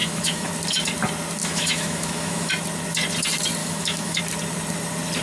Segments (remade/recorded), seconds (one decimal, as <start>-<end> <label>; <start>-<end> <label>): 0.0-0.5 remade; 0.5-1.4 recorded; 1.4-2.5 remade; 2.5-3.6 recorded; 3.6-4.2 remade; 4.2-5.2 recorded